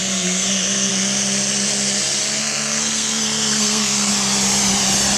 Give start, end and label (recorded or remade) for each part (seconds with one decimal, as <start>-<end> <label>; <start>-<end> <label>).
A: 0.0-0.9 remade; 0.9-2.4 recorded; 2.4-4.1 remade; 4.1-5.2 recorded